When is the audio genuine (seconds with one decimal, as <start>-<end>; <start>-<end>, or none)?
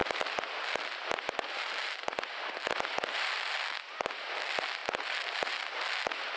0.0-6.4